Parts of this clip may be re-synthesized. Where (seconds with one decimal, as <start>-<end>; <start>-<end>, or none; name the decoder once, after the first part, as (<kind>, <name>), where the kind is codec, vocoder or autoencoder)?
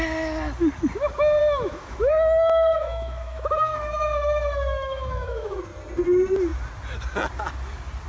1.4-2.1 (autoencoder, DAC-VAE); 2.7-5.6